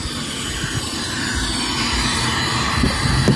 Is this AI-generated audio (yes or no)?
no